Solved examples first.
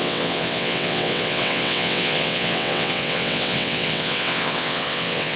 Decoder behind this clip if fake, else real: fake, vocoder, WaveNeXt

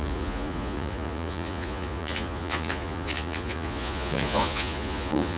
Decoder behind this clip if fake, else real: fake, vocoder, Vocos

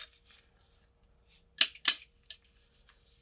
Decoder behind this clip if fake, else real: real